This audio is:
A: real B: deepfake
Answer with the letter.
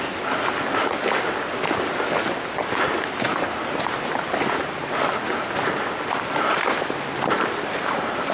A